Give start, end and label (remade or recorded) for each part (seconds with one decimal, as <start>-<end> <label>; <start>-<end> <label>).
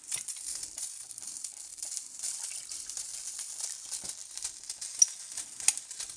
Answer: 0.0-3.1 remade; 3.1-5.8 recorded; 5.8-6.2 remade